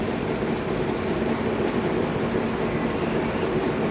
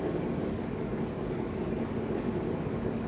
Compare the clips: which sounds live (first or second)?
first